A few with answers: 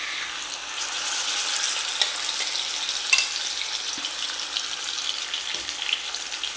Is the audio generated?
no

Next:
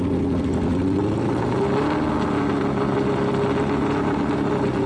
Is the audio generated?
no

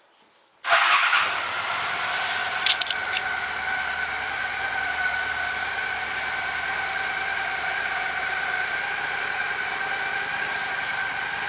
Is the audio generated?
no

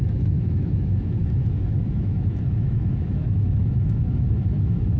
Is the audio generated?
yes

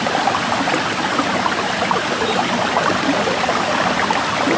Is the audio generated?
no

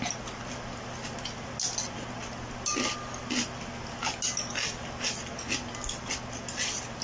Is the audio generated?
no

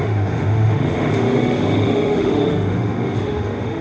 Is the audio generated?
yes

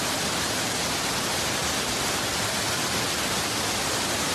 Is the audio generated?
no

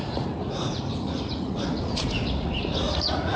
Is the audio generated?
yes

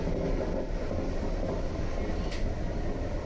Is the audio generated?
no